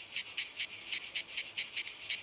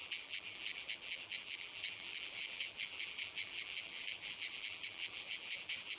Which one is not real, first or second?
second